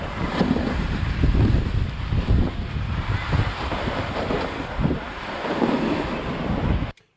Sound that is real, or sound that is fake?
real